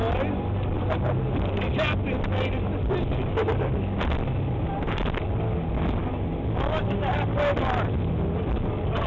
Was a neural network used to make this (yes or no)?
no